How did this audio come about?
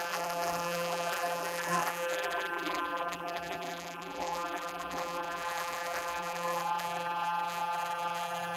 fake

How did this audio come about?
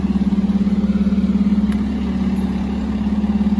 real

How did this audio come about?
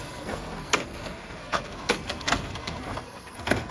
fake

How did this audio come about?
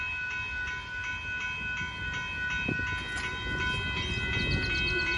real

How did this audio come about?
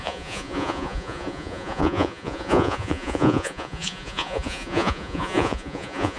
fake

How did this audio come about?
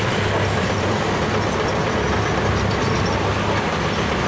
real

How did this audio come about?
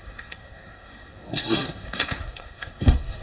fake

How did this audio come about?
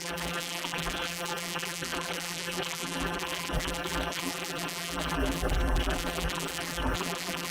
fake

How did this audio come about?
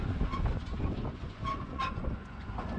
fake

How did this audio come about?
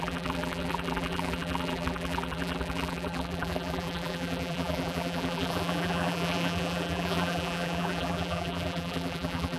fake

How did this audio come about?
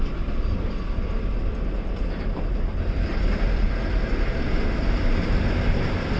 real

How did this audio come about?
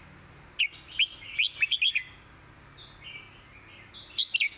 real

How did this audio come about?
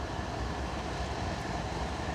real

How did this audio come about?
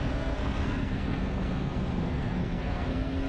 fake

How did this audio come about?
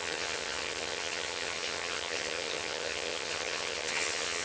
fake